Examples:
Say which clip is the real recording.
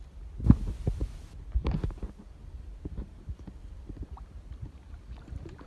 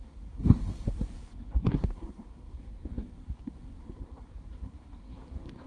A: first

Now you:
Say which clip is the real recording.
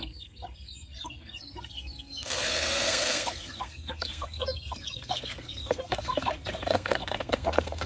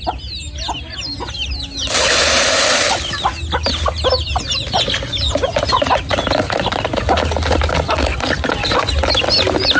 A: second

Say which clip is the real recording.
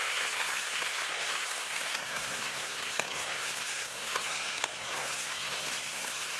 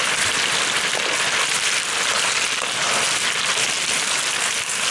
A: second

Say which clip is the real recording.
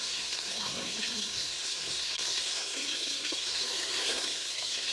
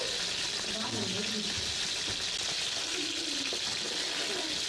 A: second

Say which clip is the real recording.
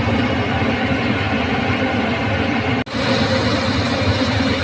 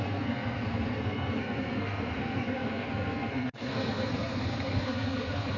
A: first